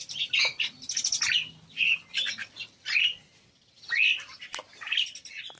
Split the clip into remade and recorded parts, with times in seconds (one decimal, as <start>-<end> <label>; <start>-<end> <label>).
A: 0.0-5.6 recorded